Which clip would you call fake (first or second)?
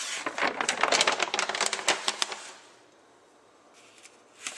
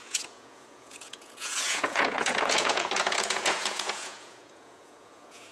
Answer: second